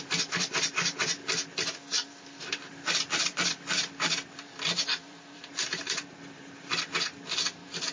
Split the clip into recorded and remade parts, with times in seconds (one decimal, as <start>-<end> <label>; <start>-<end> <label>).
0.0-1.2 remade; 1.2-1.9 recorded; 1.9-7.9 remade